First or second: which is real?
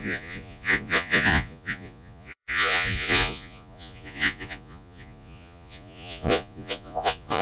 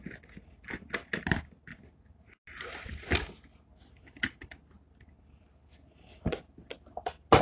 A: second